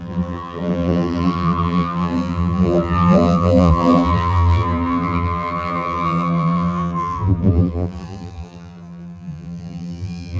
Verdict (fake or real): fake